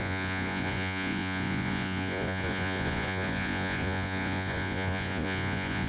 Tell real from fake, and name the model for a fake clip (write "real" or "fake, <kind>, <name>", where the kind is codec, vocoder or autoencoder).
fake, vocoder, Vocos